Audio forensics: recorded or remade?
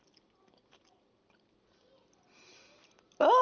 recorded